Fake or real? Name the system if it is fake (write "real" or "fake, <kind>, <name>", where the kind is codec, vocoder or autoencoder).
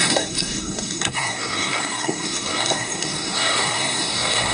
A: fake, codec, SNAC